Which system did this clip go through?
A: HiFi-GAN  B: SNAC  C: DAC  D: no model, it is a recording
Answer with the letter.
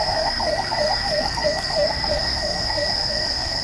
B